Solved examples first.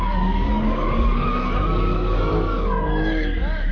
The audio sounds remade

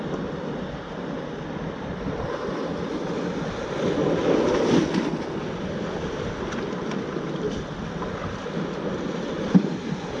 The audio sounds recorded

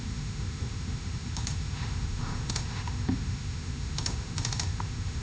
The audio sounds remade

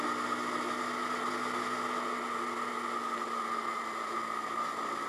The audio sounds recorded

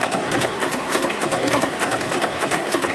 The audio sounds remade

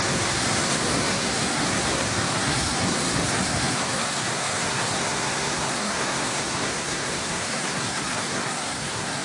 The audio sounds remade